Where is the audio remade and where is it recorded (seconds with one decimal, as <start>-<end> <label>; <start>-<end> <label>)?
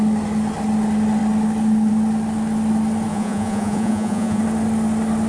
0.0-3.1 recorded; 3.1-4.4 remade; 4.4-5.3 recorded